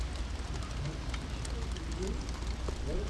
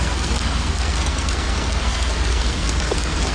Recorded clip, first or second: first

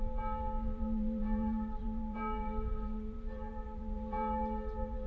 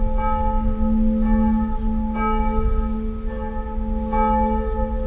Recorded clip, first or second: second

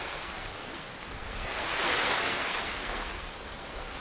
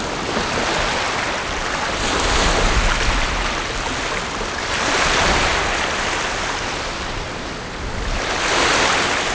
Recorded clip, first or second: second